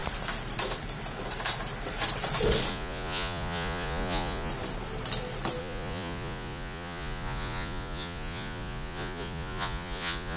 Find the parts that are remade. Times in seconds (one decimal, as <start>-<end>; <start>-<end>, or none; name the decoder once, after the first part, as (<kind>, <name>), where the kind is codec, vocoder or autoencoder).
2.7-4.5 (vocoder, Vocos); 5.6-10.4